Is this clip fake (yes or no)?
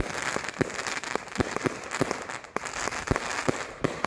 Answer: no